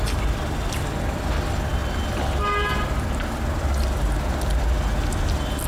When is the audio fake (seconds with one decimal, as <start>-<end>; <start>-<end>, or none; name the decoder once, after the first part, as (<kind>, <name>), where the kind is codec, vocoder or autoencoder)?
none